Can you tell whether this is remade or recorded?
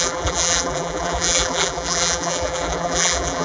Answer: remade